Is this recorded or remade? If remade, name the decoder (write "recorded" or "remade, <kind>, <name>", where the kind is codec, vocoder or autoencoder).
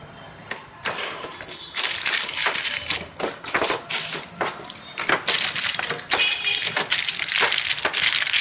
recorded